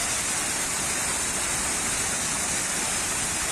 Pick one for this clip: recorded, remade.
recorded